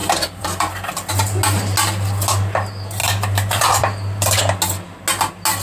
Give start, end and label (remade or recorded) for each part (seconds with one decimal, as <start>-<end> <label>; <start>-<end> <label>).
0.0-1.1 remade; 1.1-3.0 recorded; 3.0-4.4 remade; 4.4-5.6 recorded